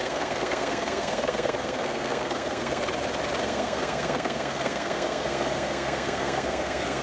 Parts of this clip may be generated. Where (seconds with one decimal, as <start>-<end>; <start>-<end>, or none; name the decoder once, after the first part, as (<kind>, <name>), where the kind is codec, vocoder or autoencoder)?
0.0-2.8 (codec, SNAC); 3.4-7.0